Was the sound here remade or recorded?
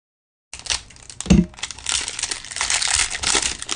recorded